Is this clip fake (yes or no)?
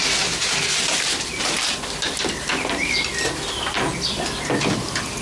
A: no